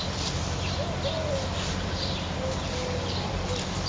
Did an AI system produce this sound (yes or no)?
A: yes